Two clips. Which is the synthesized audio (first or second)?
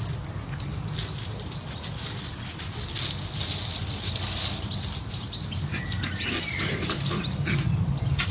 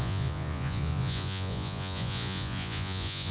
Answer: second